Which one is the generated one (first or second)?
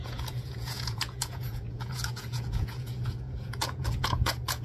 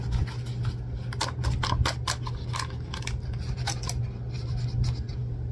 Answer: first